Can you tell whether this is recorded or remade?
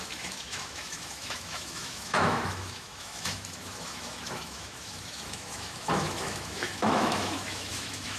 remade